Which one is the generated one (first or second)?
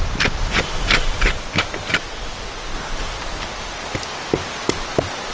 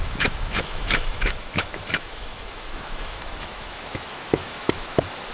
second